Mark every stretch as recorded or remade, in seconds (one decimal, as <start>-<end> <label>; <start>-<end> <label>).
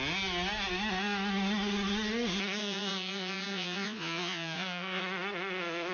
0.0-2.6 recorded; 2.6-5.0 remade; 5.0-5.9 recorded